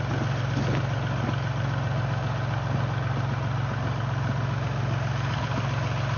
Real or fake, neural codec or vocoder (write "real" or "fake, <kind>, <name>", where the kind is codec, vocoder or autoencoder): real